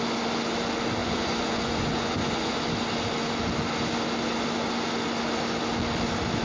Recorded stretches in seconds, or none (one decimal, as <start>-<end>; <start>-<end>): 0.0-1.0; 2.6-6.4